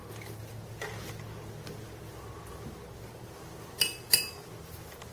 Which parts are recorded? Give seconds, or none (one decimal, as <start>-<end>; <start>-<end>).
0.0-5.1